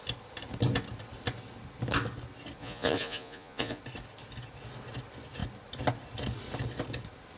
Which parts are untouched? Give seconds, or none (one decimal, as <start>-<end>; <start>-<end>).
0.0-2.6; 3.8-7.4